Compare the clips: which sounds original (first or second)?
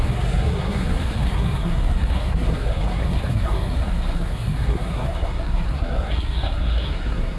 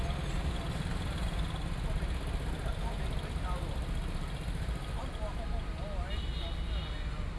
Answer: second